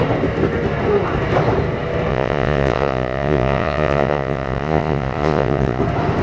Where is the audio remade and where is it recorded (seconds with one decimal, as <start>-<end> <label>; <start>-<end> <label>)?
0.0-2.1 recorded; 2.1-5.8 remade; 5.8-6.2 recorded